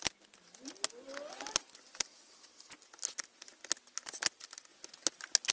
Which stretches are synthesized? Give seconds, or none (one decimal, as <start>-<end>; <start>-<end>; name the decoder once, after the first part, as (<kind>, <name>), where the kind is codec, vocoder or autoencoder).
none